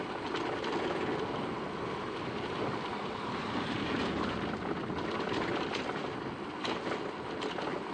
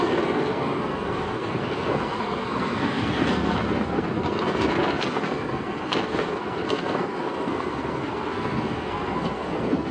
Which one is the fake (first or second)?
second